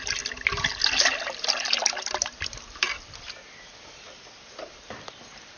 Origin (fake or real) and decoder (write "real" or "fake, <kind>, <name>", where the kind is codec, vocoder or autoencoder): real